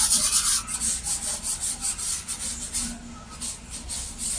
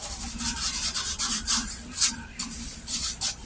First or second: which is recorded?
first